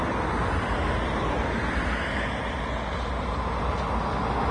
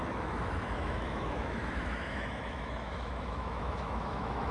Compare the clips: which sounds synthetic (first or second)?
second